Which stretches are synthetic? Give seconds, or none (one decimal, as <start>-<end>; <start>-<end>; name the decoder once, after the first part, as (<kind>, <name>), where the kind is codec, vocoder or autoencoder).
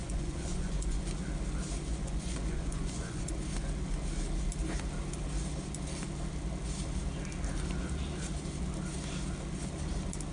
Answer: 0.0-1.0 (vocoder, Vocos); 1.9-3.3